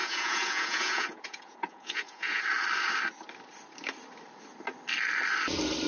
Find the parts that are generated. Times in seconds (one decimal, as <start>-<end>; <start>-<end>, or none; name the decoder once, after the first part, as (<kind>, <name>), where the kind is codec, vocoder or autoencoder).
0.0-2.4 (vocoder, Vocos)